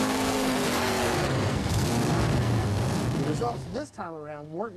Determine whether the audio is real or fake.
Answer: fake